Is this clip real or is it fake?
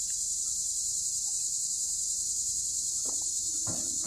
fake